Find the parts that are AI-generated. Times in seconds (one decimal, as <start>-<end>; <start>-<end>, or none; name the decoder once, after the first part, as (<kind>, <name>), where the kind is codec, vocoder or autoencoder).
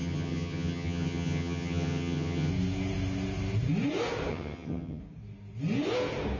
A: 0.0-2.5 (vocoder, HiFi-GAN); 4.3-5.0